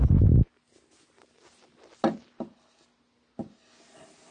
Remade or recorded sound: recorded